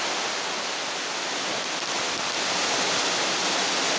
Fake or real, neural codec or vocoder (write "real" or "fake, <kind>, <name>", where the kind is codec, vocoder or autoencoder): real